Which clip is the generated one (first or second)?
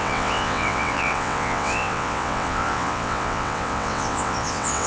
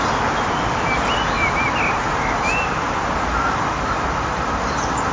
first